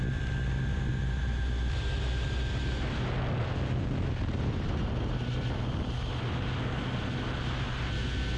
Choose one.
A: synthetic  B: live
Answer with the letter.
B